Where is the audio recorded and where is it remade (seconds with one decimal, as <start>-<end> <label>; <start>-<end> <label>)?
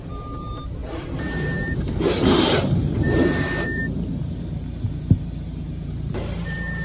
0.0-3.8 remade; 3.8-5.5 recorded; 5.5-6.8 remade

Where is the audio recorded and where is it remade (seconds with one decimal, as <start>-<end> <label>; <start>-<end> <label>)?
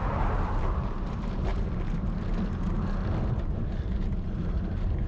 0.0-1.5 remade; 1.5-3.3 recorded; 3.3-5.1 remade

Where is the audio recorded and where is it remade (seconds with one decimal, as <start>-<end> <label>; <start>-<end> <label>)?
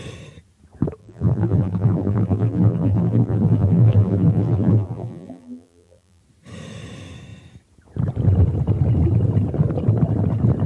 0.0-1.0 recorded; 1.0-6.2 remade; 6.2-10.7 recorded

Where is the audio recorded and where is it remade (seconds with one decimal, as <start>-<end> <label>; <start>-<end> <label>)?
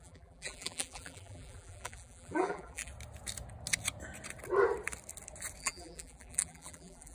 0.0-2.9 remade; 2.9-5.6 recorded; 5.6-7.1 remade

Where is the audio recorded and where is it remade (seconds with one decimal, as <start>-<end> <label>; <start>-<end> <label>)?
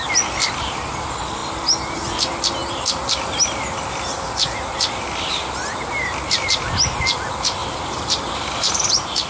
0.0-7.6 recorded; 7.6-9.3 remade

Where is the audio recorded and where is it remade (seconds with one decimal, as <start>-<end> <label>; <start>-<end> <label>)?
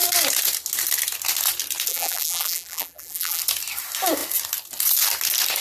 0.0-1.9 recorded; 1.9-3.4 remade; 3.4-5.6 recorded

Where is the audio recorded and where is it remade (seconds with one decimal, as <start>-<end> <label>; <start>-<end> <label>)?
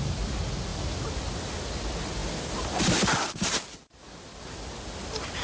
0.0-5.4 recorded